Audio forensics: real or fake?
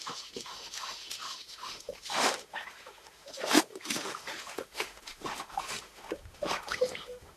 fake